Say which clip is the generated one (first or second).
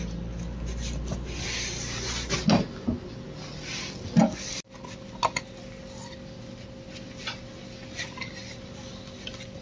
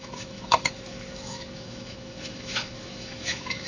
second